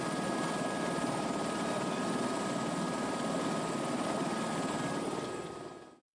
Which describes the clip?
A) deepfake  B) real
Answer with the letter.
B